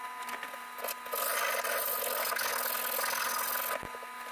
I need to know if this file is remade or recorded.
recorded